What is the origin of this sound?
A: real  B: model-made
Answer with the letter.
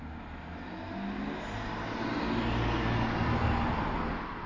A